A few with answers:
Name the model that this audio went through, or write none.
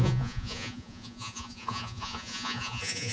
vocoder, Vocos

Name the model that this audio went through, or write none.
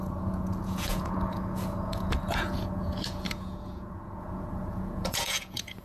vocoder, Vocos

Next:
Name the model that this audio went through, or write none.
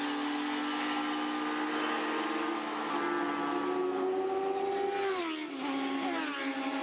none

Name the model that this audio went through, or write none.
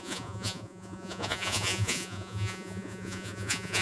vocoder, Vocos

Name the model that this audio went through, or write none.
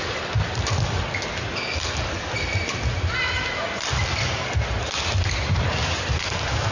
none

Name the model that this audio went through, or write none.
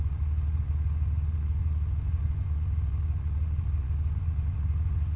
vocoder, Vocos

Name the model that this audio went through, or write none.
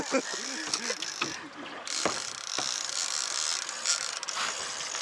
none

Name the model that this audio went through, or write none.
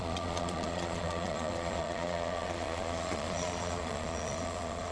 vocoder, Vocos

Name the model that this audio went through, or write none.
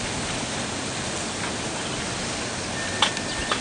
none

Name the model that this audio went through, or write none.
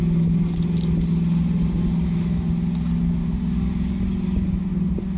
none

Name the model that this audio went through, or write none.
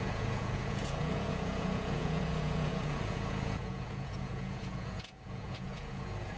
vocoder, Vocos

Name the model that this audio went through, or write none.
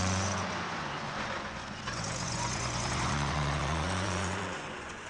vocoder, Vocos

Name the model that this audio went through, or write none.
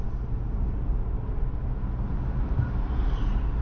none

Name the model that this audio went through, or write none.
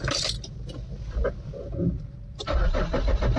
none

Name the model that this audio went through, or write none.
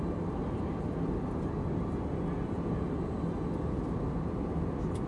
none